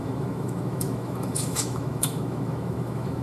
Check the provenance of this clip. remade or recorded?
remade